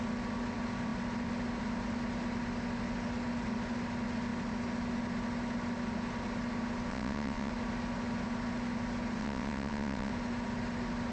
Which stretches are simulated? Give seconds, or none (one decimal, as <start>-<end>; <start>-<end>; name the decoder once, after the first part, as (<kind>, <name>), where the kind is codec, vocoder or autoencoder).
6.9-7.5 (vocoder, WaveNeXt); 9.2-10.1